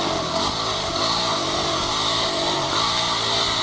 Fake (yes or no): no